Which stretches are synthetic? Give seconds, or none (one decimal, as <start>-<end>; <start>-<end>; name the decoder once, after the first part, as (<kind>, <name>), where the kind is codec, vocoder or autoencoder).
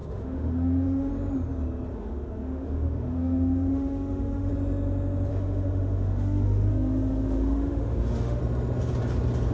0.0-1.1 (autoencoder, DAC-VAE); 1.9-4.5; 5.3-8.4